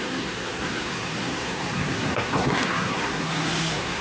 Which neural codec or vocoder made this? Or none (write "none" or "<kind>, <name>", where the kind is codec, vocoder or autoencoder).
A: codec, SNAC